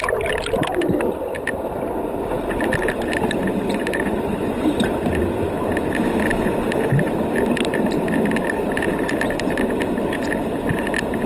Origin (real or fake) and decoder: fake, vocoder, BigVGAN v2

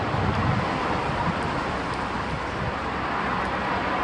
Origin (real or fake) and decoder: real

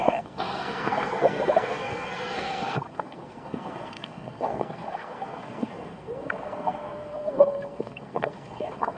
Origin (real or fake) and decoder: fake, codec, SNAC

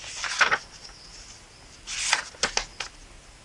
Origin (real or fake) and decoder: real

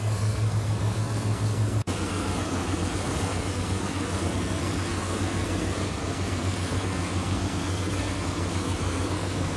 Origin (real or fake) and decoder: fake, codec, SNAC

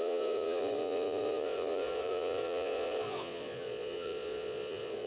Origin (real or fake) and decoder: fake, vocoder, Vocos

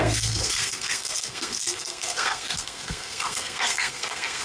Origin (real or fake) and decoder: fake, codec, SNAC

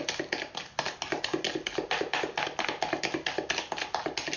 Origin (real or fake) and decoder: real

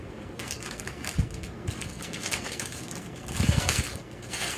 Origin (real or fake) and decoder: fake, codec, SNAC